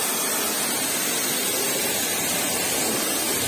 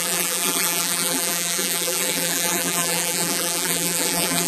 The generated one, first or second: second